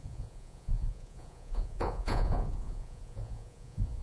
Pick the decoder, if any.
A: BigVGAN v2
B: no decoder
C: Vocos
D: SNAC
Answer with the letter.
C